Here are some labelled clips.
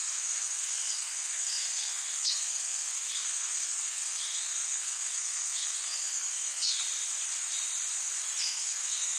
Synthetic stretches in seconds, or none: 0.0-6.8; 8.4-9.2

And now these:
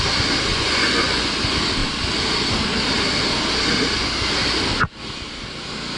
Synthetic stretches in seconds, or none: 0.5-1.3

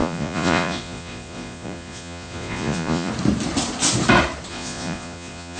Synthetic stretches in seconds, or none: 0.0-3.1; 4.5-5.6

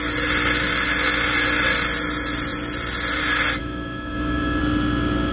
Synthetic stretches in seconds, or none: 3.6-4.6

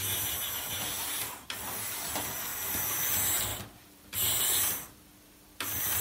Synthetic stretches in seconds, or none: 3.5-4.3